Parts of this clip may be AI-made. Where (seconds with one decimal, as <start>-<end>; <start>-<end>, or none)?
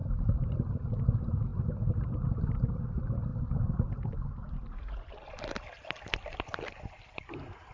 0.0-1.0; 1.5-2.8; 3.3-4.2